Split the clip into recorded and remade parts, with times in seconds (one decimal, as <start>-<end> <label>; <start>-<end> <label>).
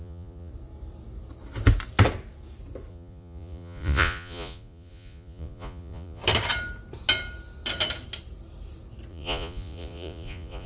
0.0-0.5 remade; 0.5-2.9 recorded; 2.9-6.2 remade; 6.2-9.1 recorded; 9.1-10.7 remade